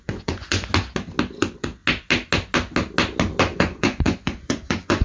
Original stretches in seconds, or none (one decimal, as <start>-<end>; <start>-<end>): 0.7-1.4; 1.8-3.4